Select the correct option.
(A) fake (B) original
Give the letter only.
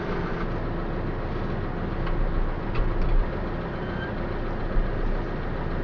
B